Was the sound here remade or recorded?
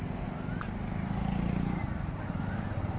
recorded